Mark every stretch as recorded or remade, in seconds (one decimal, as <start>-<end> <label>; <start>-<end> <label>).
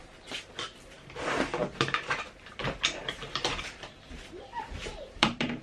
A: 0.0-1.6 recorded; 1.6-2.2 remade; 2.2-2.6 recorded; 2.6-5.6 remade